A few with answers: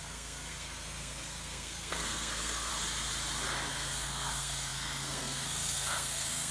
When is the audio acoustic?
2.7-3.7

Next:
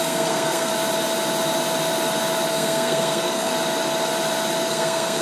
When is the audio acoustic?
0.7-2.5; 3.5-4.7

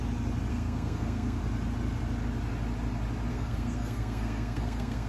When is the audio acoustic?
0.0-0.5; 1.4-3.3

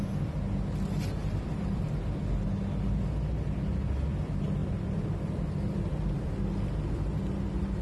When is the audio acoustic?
0.0-1.2; 1.8-4.6; 6.3-7.8

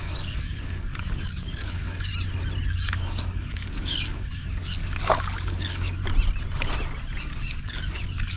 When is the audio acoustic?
2.1-2.7; 6.0-7.2

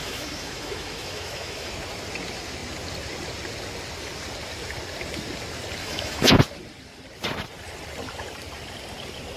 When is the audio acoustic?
1.7-5.8; 6.4-9.4